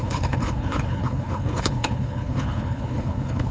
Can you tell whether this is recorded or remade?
remade